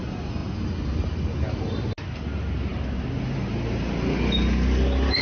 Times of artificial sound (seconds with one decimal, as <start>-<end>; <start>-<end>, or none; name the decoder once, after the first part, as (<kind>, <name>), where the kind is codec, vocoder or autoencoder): none